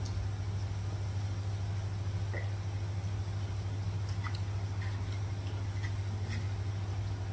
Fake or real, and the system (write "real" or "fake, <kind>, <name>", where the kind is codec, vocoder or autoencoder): real